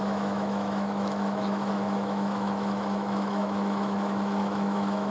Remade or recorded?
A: remade